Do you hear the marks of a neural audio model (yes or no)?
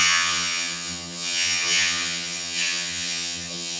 yes